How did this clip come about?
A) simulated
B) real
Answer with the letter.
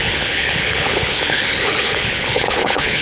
A